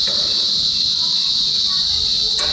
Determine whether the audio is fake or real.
real